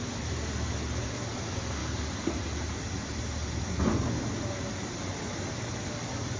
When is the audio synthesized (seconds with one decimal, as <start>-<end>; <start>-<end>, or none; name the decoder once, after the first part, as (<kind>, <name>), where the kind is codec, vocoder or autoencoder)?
none